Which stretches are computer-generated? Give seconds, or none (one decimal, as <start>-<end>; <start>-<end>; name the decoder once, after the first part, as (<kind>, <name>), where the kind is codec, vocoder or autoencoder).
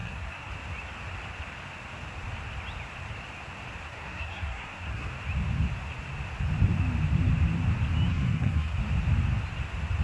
0.0-0.5 (codec, SNAC); 3.9-5.1; 8.1-8.8